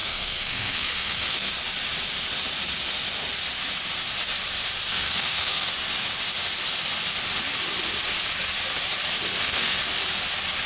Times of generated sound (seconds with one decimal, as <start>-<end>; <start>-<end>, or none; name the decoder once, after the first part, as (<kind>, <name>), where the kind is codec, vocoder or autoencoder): 0.0-1.5 (codec, SNAC); 4.9-5.7; 9.4-9.8